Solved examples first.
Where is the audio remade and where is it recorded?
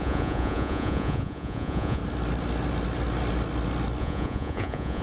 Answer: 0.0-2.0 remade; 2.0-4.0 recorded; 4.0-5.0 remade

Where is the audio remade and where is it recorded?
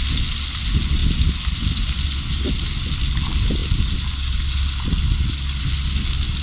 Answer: 0.0-6.4 recorded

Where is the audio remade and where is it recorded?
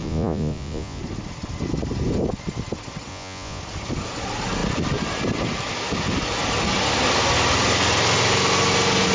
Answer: 0.0-1.0 remade; 1.0-3.1 recorded; 3.1-3.6 remade; 3.6-9.1 recorded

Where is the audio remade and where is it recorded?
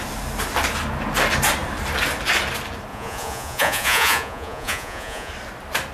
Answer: 0.0-2.9 recorded; 2.9-5.3 remade; 5.3-5.9 recorded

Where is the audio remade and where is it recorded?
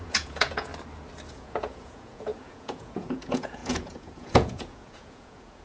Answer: 0.0-0.7 remade; 0.7-1.3 recorded; 1.3-5.6 remade